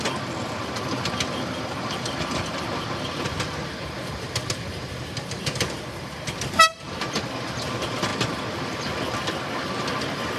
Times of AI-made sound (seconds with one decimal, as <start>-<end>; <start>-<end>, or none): none